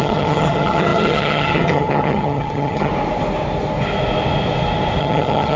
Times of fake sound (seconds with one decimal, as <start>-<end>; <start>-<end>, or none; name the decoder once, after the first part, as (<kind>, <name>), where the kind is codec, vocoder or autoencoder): 0.0-2.9 (vocoder, HiFi-GAN); 5.0-5.6